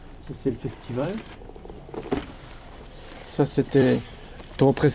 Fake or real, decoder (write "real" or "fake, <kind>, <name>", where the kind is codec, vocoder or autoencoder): fake, vocoder, BigVGAN v2